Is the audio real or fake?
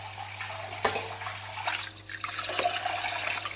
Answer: real